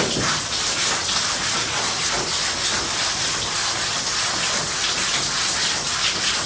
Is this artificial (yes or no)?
no